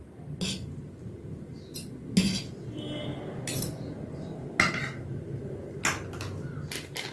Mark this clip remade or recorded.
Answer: recorded